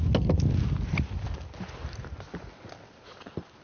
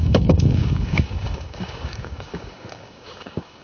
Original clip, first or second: first